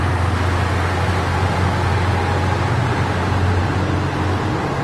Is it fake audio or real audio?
real